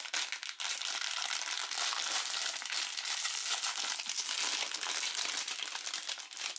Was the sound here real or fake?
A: real